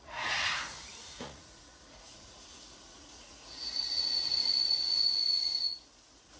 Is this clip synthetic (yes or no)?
yes